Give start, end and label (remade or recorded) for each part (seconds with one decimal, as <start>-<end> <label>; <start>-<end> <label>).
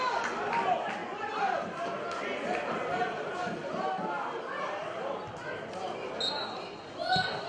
0.0-7.5 recorded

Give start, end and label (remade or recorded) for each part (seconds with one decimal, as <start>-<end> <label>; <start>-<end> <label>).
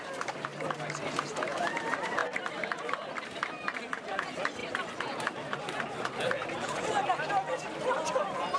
0.0-8.6 recorded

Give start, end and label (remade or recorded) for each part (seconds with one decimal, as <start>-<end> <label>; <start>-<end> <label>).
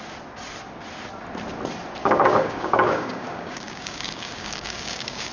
0.0-2.0 recorded; 2.0-5.3 remade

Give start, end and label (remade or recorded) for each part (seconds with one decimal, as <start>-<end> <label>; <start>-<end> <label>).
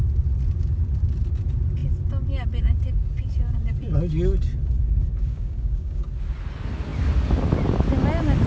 0.0-5.2 recorded; 5.2-6.0 remade; 6.0-8.5 recorded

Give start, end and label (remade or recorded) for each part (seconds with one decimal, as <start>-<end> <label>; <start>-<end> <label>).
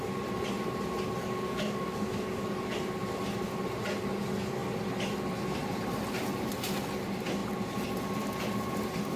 0.0-1.2 recorded; 1.2-2.6 remade; 2.6-9.2 recorded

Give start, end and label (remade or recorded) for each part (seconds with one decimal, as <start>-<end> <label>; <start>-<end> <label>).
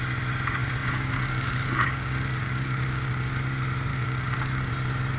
0.0-0.6 recorded; 0.6-3.4 remade; 3.4-3.9 recorded; 3.9-4.7 remade; 4.7-5.2 recorded